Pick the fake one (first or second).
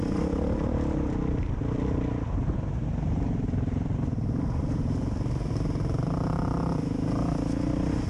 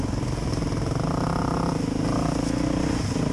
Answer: first